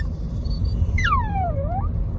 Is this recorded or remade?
recorded